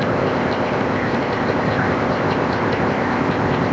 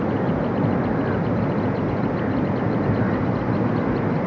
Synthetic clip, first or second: first